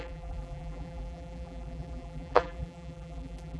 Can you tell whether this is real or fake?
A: fake